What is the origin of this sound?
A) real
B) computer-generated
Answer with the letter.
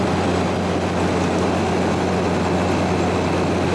A